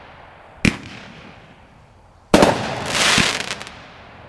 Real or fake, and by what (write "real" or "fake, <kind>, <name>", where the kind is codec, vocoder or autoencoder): real